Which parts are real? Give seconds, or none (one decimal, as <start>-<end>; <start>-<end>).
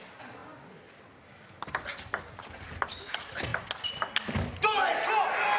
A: 0.0-5.6